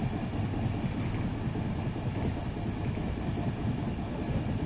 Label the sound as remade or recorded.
recorded